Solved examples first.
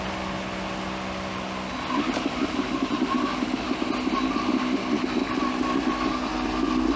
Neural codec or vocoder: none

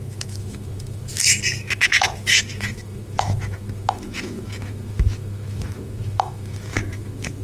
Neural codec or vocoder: autoencoder, DAC-VAE